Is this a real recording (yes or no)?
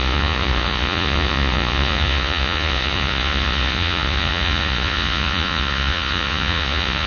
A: no